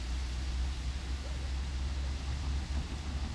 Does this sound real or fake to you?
real